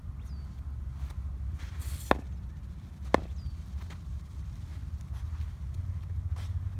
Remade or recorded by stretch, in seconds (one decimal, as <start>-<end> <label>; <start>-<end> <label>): 0.0-6.8 recorded